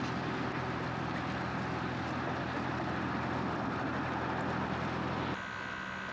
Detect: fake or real real